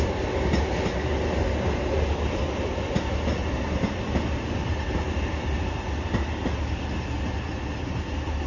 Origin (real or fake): real